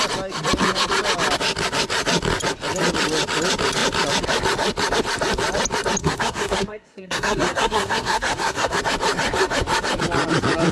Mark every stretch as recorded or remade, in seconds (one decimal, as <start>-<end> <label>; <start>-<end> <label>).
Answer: 0.0-6.0 recorded; 6.0-8.8 remade; 8.8-10.7 recorded